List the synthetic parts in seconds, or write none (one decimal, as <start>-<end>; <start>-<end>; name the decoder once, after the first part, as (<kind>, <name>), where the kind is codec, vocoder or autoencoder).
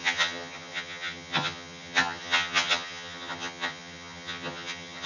0.0-5.1 (vocoder, HiFi-GAN)